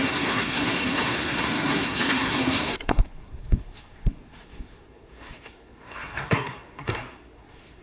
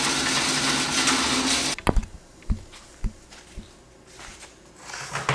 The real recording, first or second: second